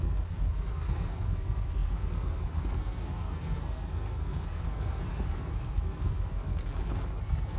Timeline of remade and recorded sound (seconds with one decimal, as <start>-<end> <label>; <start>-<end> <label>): 0.0-7.6 remade